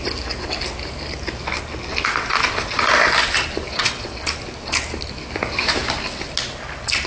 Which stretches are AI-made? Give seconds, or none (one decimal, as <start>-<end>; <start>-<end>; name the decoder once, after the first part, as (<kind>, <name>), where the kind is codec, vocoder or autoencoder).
3.7-4.2 (vocoder, WaveNeXt)